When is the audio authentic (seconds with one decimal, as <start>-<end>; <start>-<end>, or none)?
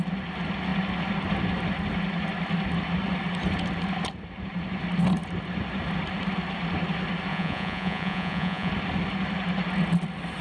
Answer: 0.0-7.3; 8.7-10.4